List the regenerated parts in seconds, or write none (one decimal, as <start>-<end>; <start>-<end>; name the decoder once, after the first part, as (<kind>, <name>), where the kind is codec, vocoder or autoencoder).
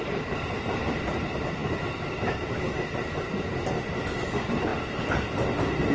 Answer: 0.0-4.7 (vocoder, BigVGAN v2)